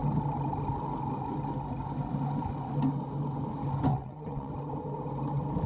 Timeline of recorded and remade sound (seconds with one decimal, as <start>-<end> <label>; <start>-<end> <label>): 0.0-3.9 recorded; 3.9-4.5 remade; 4.5-5.7 recorded